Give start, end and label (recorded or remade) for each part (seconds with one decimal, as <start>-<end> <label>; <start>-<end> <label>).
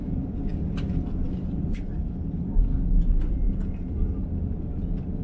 0.0-5.2 recorded